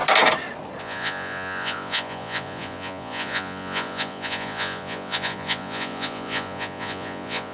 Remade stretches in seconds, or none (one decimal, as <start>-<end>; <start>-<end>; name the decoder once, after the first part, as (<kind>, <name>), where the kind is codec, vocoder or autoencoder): 0.8-7.5 (vocoder, Vocos)